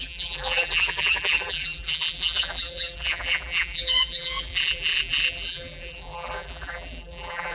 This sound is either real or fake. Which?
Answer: fake